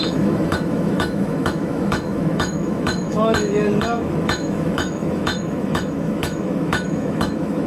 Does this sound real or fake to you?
fake